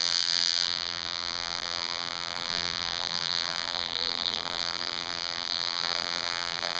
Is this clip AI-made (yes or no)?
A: yes